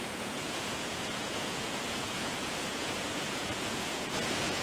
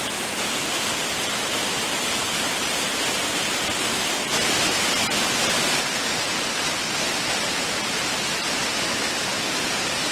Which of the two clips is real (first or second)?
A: second